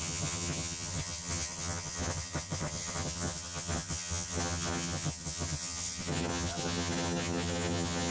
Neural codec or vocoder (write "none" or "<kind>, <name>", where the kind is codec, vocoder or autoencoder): vocoder, HiFi-GAN